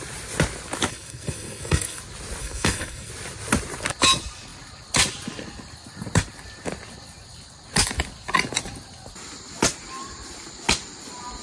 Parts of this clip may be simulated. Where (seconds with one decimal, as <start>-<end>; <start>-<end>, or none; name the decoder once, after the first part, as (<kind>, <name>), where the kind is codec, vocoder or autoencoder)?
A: 0.9-2.0 (codec, SNAC); 2.4-3.1